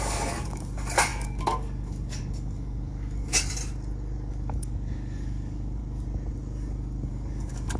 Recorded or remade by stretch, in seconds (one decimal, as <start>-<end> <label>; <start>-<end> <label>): 0.0-3.6 remade; 3.6-4.3 recorded; 4.3-5.8 remade; 5.8-7.1 recorded; 7.1-7.8 remade